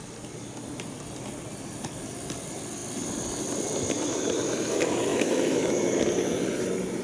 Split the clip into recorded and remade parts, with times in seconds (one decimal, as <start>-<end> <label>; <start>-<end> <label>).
0.0-5.1 recorded; 5.1-5.7 remade; 5.7-7.0 recorded